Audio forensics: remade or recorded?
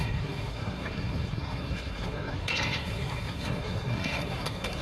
remade